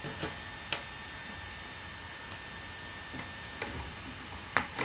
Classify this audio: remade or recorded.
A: recorded